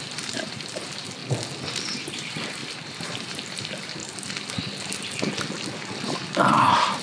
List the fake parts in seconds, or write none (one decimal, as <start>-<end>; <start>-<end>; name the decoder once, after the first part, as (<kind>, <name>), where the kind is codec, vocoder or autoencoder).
0.0-1.2 (vocoder, BigVGAN v2); 1.7-4.0; 6.5-7.0